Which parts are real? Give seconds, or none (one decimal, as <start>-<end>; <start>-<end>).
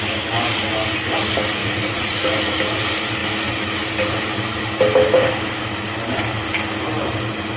0.0-1.6; 2.2-7.6